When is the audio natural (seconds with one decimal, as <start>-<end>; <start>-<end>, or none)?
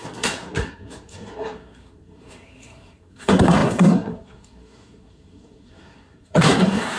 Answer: none